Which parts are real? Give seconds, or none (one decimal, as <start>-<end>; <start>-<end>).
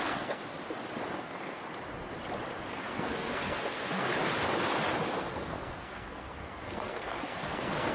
0.4-1.2; 1.6-2.7; 4.1-5.2